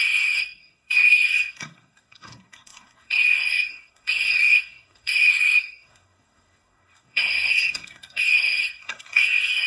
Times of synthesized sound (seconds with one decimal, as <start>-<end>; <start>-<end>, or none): 0.0-9.7